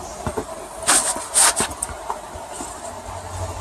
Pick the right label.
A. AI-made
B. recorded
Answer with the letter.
B